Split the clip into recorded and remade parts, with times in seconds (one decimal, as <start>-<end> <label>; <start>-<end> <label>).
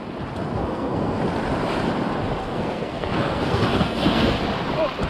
0.0-0.6 recorded; 0.6-1.2 remade; 1.2-2.4 recorded; 2.4-4.4 remade; 4.4-5.1 recorded